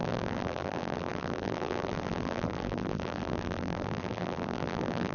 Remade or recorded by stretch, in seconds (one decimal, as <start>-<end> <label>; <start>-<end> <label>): 0.0-5.1 remade